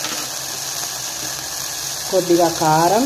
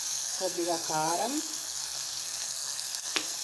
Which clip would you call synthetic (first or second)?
second